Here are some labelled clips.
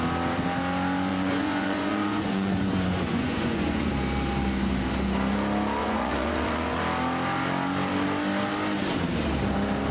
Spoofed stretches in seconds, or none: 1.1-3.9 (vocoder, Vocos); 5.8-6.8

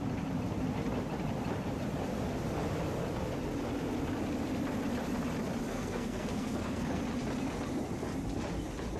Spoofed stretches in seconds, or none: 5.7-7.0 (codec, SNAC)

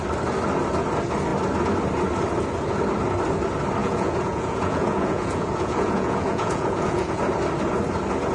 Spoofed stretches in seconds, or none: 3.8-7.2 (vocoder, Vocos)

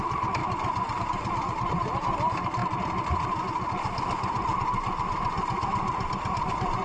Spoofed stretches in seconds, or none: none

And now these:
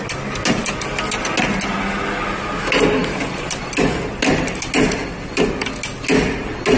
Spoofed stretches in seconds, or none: none